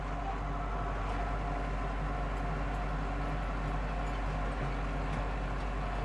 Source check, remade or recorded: recorded